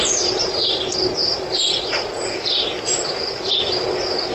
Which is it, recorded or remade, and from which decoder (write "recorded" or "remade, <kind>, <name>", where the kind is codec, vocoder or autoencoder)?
recorded